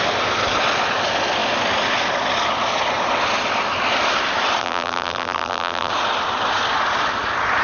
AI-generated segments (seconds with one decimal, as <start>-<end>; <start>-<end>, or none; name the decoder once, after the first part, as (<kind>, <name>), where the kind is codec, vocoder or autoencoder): 4.6-5.9 (vocoder, BigVGAN v2)